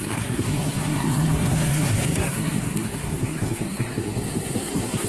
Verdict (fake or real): fake